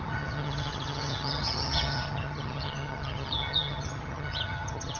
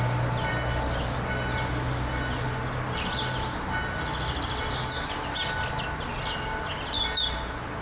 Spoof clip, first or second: first